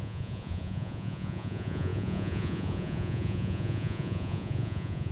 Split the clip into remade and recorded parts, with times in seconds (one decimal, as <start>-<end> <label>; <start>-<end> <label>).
0.0-5.1 remade